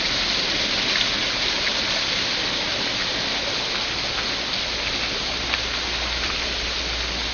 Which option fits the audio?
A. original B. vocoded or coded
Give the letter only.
A